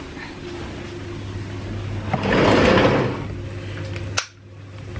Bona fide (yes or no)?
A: yes